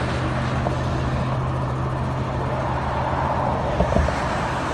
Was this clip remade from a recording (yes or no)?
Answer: no